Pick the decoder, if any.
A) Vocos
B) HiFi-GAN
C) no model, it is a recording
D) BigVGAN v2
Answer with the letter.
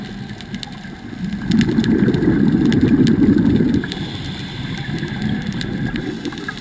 C